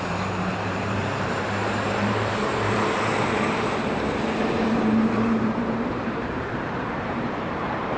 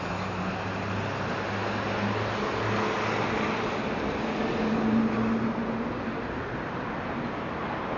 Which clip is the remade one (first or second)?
first